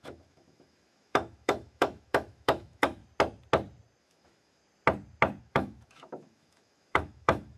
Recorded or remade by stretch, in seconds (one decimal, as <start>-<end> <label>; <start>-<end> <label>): 0.0-3.0 remade; 3.0-4.0 recorded; 4.0-4.6 remade; 4.6-5.4 recorded; 5.4-7.6 remade